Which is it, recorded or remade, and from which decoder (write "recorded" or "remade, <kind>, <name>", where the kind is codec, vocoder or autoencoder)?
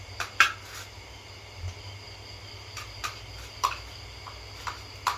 recorded